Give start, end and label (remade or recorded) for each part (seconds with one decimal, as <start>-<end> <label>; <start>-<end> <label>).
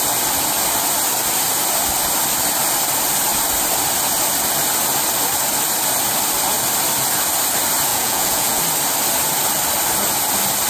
0.0-7.9 recorded; 7.9-8.6 remade; 8.6-10.7 recorded